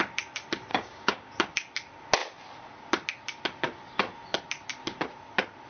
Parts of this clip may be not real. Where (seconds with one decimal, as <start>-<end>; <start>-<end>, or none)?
0.7-1.3